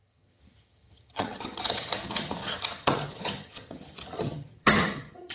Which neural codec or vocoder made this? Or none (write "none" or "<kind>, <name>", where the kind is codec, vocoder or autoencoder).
vocoder, HiFi-GAN